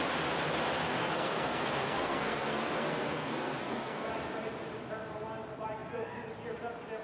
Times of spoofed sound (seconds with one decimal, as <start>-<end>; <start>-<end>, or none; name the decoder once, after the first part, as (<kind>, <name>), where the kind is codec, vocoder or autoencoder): 0.8-4.1 (codec, SNAC)